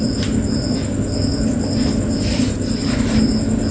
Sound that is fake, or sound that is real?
real